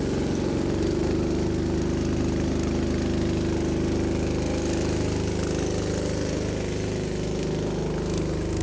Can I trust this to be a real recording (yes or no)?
yes